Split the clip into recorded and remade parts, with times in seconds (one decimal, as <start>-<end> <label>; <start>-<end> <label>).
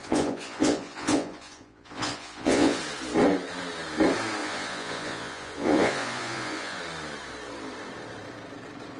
0.0-2.8 remade; 2.8-4.4 recorded; 4.4-6.8 remade; 6.8-9.0 recorded